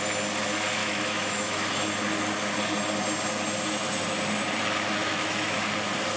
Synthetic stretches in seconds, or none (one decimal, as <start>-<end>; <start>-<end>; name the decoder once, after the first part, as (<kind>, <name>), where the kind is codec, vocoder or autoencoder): 0.8-1.7 (autoencoder, DAC-VAE); 5.0-5.6